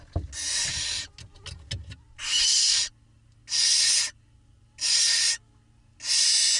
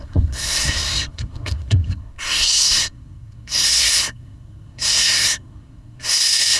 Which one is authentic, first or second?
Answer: first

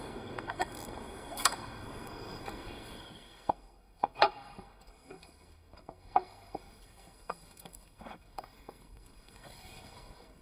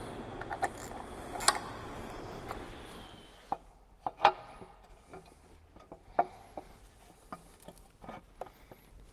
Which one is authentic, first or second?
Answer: second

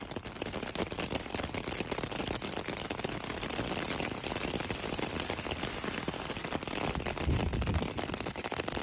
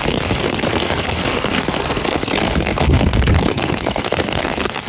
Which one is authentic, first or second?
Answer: first